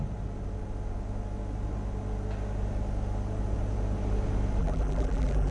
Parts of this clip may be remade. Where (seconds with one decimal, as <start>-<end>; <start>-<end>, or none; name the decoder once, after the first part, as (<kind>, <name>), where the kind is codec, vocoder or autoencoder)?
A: 4.6-5.5 (vocoder, BigVGAN v2)